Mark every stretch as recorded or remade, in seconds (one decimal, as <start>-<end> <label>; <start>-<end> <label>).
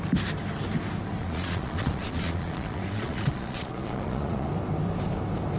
0.0-1.2 recorded; 1.2-4.5 remade; 4.5-5.6 recorded